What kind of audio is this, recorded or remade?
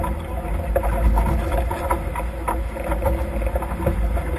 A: recorded